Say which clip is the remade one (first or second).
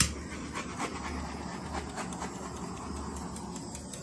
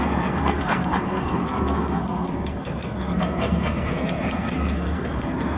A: second